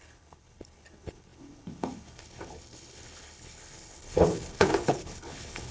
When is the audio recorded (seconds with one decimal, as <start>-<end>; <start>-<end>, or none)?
none